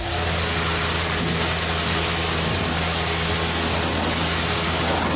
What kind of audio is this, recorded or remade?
recorded